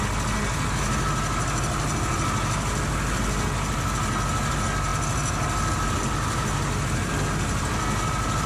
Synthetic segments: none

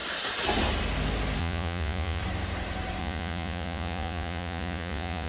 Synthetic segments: 1.4-2.2; 3.0-5.3

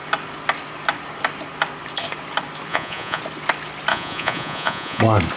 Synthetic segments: 2.7-3.2; 3.9-5.0

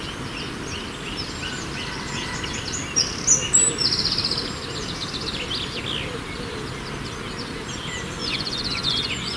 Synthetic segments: 8.2-9.4

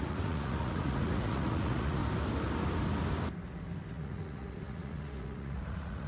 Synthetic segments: 0.0-2.0; 3.9-6.1